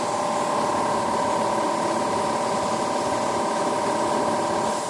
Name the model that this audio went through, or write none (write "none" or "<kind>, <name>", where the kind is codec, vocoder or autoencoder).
none